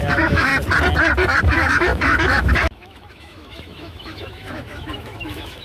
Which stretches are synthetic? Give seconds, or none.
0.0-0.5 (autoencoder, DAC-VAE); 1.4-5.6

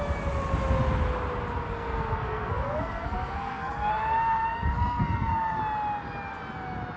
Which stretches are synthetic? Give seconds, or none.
1.6-5.6 (codec, SNAC)

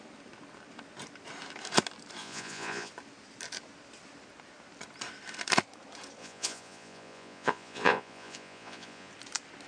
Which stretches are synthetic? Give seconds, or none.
2.2-2.9 (vocoder, Vocos); 6.2-9.1